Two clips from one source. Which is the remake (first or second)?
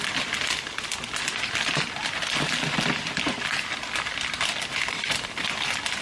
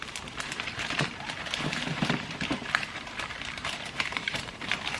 second